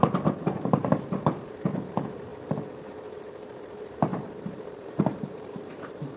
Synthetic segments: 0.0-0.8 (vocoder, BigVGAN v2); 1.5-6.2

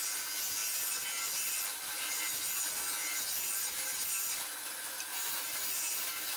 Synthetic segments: 5.1-5.9 (vocoder, BigVGAN v2)

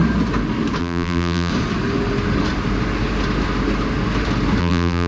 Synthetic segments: 0.8-1.5 (vocoder, BigVGAN v2); 4.6-5.1

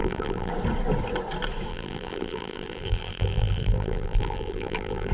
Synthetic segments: 0.0-0.5 (vocoder, BigVGAN v2); 1.7-5.1

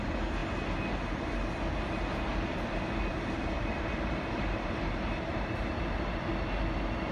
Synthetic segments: 2.3-6.3 (vocoder, BigVGAN v2)

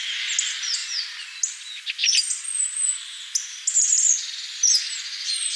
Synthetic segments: 2.0-4.7 (vocoder, BigVGAN v2)

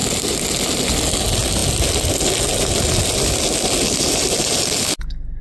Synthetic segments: 0.0-0.7 (vocoder, BigVGAN v2)

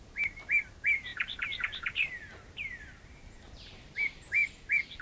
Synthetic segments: 0.0-4.4 (vocoder, BigVGAN v2)